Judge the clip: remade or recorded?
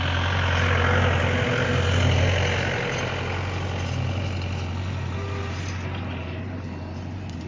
recorded